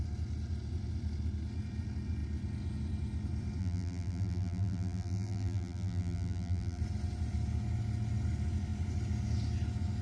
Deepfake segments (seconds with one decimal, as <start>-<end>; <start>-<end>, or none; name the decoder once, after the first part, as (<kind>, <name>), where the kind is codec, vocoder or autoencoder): 3.6-6.8 (vocoder, BigVGAN v2)